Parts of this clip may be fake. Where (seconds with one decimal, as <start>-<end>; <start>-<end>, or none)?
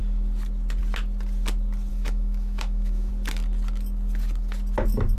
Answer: 1.9-3.1